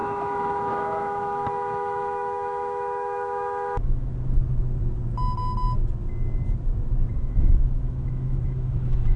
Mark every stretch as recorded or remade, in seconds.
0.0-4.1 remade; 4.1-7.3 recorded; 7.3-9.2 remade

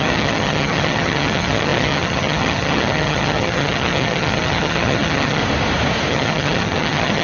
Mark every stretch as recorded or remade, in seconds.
0.0-5.4 remade; 5.4-6.1 recorded; 6.1-7.2 remade

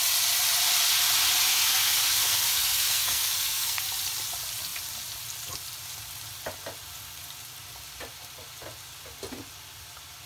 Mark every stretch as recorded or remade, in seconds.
0.0-1.5 recorded; 1.5-3.8 remade; 3.8-10.3 recorded

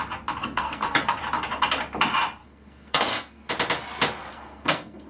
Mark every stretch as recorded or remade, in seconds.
0.0-0.4 recorded; 0.4-1.2 remade; 1.2-2.4 recorded; 2.4-3.5 remade; 3.5-4.3 recorded; 4.3-5.1 remade